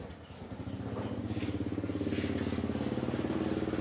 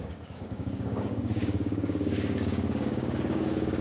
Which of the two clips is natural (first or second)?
first